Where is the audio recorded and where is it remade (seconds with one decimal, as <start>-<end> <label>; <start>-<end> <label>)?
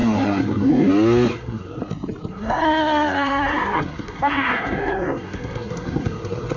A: 0.0-0.9 remade; 0.9-1.3 recorded; 1.3-1.8 remade; 1.8-2.3 recorded; 2.3-6.6 remade